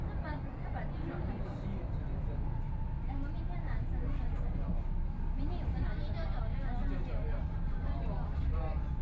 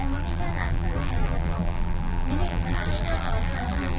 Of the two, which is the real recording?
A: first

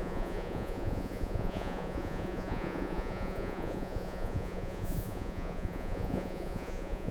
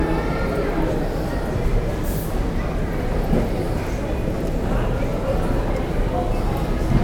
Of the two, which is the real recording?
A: second